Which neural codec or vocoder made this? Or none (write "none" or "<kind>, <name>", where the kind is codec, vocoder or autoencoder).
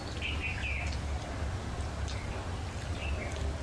none